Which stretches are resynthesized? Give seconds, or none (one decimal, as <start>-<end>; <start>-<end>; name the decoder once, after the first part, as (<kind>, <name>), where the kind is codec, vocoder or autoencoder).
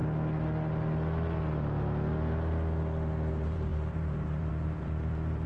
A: 3.3-5.5 (vocoder, BigVGAN v2)